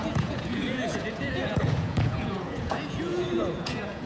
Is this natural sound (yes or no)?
no